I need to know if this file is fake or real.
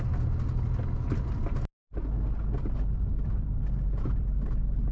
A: real